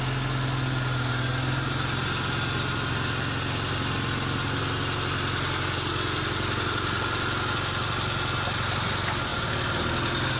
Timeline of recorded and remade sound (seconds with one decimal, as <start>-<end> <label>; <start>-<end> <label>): 0.0-10.4 recorded